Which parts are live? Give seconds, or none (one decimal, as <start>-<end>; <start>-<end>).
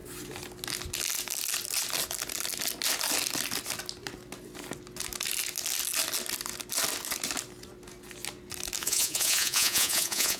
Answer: 0.0-8.8